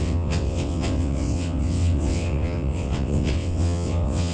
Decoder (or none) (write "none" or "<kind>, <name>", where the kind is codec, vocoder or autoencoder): vocoder, WaveNeXt